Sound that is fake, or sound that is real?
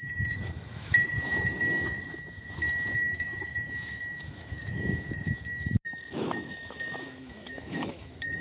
fake